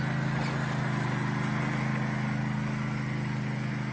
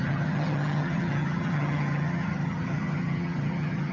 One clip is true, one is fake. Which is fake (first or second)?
second